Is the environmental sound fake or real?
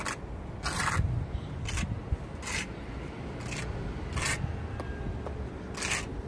real